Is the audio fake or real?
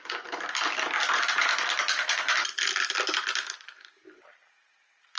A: real